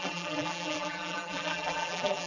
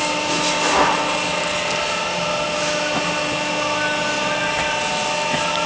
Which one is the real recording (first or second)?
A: second